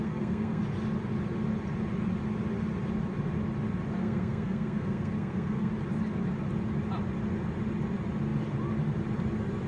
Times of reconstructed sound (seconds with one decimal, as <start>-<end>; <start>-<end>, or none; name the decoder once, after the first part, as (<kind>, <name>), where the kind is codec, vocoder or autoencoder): 0.0-0.6 (codec, SNAC); 4.0-5.7